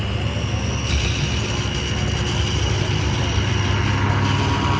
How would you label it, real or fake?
real